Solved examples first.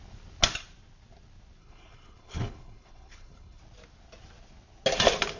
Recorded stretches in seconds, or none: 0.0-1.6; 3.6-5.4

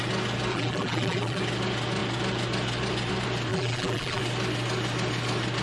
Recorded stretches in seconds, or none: 0.0-0.5; 1.4-3.5; 4.2-5.6

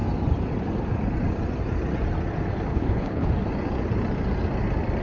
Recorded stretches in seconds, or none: 0.0-2.7; 3.3-5.0

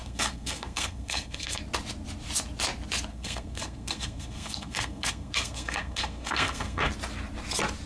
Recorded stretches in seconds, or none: 1.6-3.1; 6.9-7.9